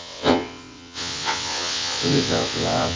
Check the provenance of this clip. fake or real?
fake